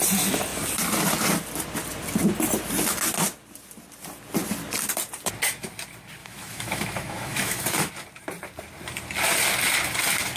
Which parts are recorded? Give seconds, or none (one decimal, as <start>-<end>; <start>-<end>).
0.0-6.2; 7.9-10.4